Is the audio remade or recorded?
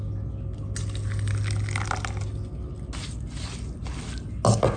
recorded